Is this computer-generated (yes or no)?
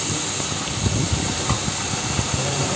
no